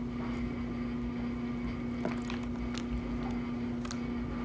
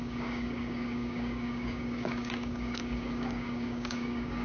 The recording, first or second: first